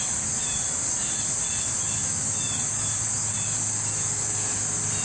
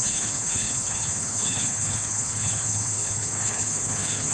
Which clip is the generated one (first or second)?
second